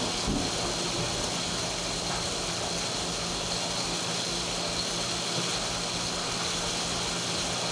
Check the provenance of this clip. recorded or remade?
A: recorded